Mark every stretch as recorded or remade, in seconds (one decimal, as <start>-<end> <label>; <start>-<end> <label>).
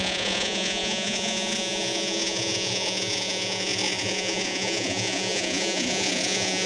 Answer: 0.0-6.7 remade